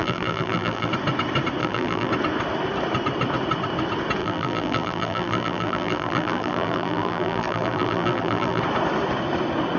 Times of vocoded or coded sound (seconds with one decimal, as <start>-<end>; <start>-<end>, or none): 0.0-0.9; 1.6-2.1; 4.2-8.6